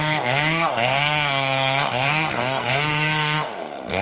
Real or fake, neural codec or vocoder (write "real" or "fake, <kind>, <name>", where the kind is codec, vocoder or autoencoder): fake, codec, SNAC